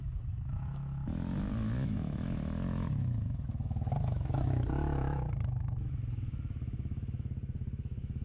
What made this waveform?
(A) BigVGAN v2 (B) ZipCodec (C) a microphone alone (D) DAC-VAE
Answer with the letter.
D